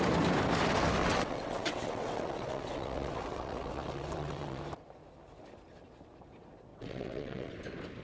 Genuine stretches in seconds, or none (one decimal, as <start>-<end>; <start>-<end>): 0.0-1.0; 4.6-6.7; 7.5-8.0